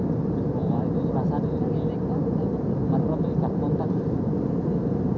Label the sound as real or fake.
fake